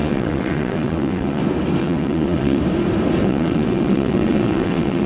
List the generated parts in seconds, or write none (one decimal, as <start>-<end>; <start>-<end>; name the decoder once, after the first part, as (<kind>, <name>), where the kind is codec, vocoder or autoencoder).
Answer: 0.0-1.4 (vocoder, WaveNeXt); 1.8-2.6; 3.2-5.1